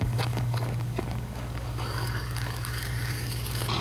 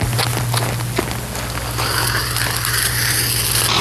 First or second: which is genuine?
second